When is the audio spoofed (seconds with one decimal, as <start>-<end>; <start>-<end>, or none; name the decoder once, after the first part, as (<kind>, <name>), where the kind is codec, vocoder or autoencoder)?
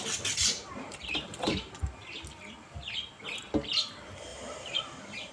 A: 0.4-1.8 (vocoder, BigVGAN v2); 4.3-5.3